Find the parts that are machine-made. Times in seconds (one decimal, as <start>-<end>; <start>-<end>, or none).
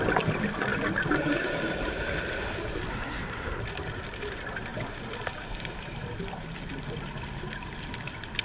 2.9-3.6